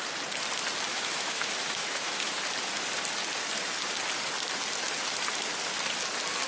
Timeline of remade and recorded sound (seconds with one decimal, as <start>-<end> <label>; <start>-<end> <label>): 0.0-0.9 recorded; 0.9-2.4 remade; 2.4-6.5 recorded